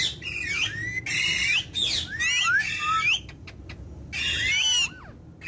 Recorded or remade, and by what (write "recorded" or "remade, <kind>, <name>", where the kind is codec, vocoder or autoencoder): recorded